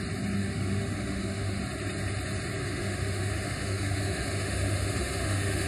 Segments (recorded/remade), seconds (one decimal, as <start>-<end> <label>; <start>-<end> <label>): 0.0-0.4 recorded; 0.4-1.6 remade; 1.6-2.6 recorded; 2.6-5.7 remade